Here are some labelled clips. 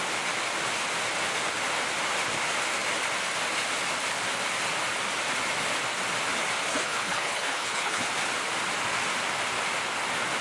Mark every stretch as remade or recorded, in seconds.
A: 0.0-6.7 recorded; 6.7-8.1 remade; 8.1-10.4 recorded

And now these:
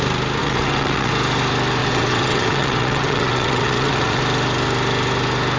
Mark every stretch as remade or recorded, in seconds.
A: 0.0-0.4 recorded; 0.4-1.1 remade; 1.1-1.8 recorded; 1.8-4.2 remade; 4.2-5.6 recorded

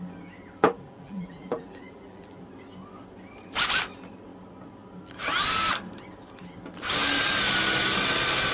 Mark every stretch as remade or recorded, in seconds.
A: 0.0-0.6 recorded; 0.6-2.4 remade; 2.4-8.5 recorded

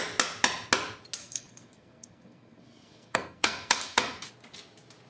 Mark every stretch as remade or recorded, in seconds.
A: 0.0-1.2 recorded; 1.2-4.3 remade; 4.3-5.1 recorded

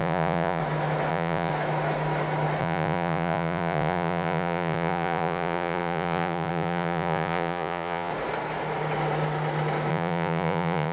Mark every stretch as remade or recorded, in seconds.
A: 0.0-0.6 remade; 0.6-1.1 recorded; 1.1-1.5 remade; 1.5-2.6 recorded; 2.6-8.1 remade; 8.1-9.9 recorded; 9.9-10.9 remade

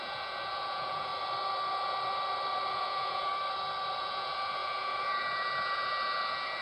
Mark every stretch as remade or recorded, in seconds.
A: 0.0-1.1 remade; 1.1-2.7 recorded; 2.7-3.3 remade; 3.3-4.0 recorded; 4.0-6.6 remade

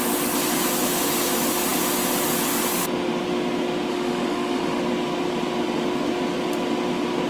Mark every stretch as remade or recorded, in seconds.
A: 0.0-3.9 recorded; 3.9-4.8 remade; 4.8-7.3 recorded